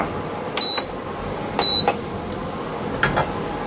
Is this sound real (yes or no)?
yes